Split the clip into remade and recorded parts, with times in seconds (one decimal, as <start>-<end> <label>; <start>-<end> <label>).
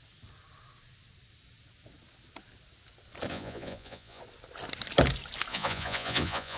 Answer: 0.0-3.3 recorded; 3.3-4.2 remade; 4.2-5.5 recorded; 5.5-6.6 remade